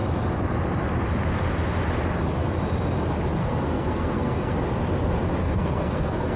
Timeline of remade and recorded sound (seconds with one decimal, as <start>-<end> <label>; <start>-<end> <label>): 0.0-3.4 recorded; 3.4-4.6 remade; 4.6-5.4 recorded; 5.4-6.4 remade